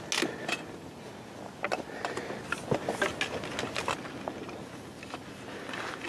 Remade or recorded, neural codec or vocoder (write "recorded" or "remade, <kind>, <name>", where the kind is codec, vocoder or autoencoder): recorded